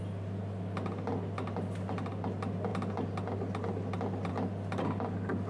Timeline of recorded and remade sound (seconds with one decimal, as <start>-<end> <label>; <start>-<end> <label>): 0.0-5.5 recorded